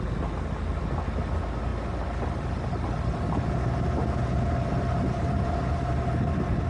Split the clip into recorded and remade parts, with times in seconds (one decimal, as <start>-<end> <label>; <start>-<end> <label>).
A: 0.0-6.7 recorded